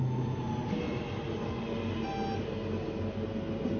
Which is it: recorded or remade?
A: recorded